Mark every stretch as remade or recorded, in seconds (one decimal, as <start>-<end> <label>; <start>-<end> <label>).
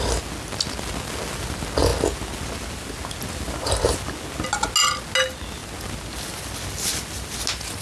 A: 0.0-7.8 recorded